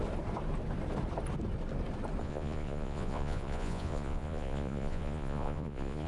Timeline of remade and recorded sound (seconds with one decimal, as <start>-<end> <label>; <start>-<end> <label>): 0.0-2.2 recorded; 2.2-6.1 remade